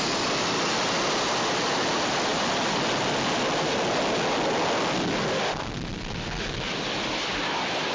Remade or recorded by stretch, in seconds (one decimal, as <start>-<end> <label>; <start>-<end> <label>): 0.0-7.9 recorded

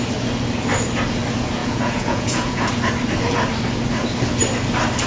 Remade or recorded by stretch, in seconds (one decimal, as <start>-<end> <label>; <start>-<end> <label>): 0.0-1.6 recorded; 1.6-2.7 remade; 2.7-5.1 recorded

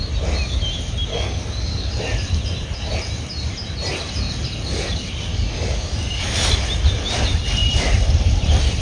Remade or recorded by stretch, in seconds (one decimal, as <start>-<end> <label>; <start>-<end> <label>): 0.0-1.1 recorded; 1.1-1.9 remade; 1.9-5.3 recorded; 5.3-6.5 remade; 6.5-8.8 recorded